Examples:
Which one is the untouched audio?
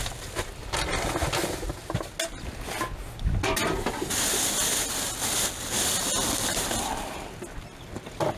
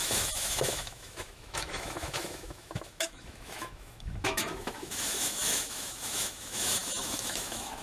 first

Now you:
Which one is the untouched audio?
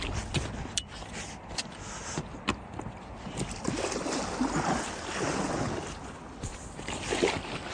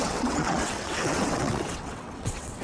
first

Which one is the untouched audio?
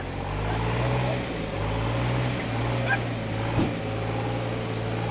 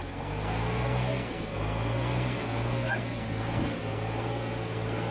first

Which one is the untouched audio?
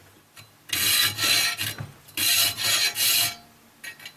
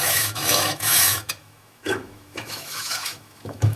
first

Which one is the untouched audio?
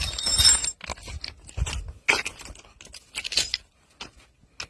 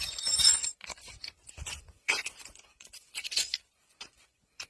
first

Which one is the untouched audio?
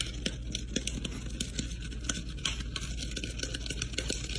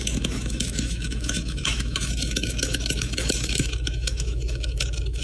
first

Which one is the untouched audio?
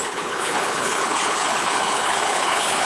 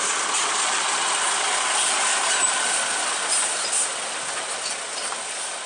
second